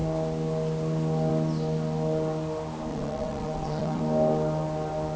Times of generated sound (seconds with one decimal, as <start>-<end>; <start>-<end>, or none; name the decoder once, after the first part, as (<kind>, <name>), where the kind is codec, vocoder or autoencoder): 2.9-4.0 (vocoder, WaveNeXt)